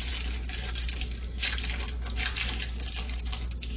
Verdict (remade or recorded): recorded